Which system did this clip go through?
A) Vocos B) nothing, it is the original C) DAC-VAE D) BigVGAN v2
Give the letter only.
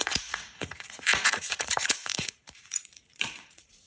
A